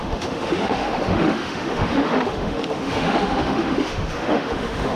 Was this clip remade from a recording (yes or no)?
yes